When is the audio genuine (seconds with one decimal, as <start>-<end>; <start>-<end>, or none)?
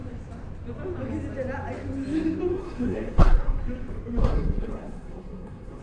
0.0-2.5; 3.6-4.2